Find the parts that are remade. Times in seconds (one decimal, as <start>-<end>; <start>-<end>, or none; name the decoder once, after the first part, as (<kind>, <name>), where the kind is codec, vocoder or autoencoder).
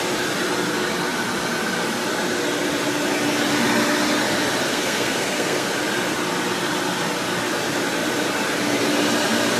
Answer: 4.7-5.7 (codec, SNAC)